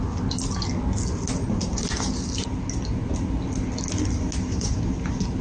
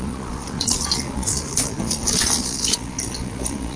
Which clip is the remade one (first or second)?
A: second